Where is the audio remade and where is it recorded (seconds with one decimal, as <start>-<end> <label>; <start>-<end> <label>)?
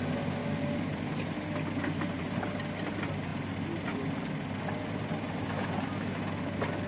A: 0.0-6.9 recorded